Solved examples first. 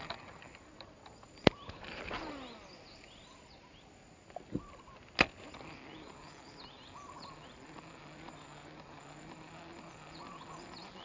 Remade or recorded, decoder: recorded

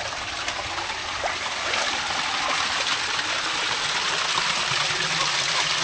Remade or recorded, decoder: recorded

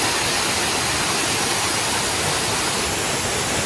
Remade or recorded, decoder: recorded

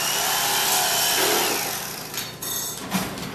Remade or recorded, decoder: recorded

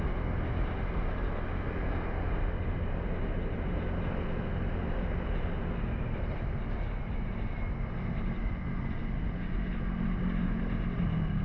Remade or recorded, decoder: recorded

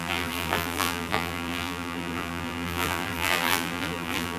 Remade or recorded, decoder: remade, vocoder, BigVGAN v2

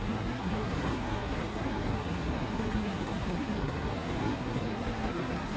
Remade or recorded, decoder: remade, codec, SNAC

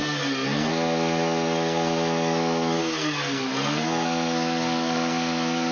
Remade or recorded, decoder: remade, codec, SNAC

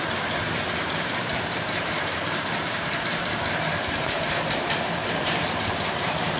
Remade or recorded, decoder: remade, vocoder, BigVGAN v2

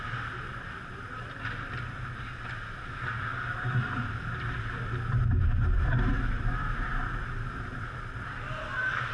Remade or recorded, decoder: recorded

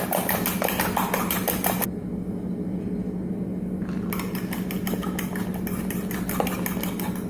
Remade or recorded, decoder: recorded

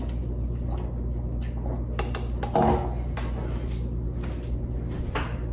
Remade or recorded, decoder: recorded